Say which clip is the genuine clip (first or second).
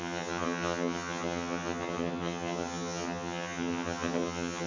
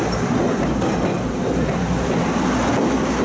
second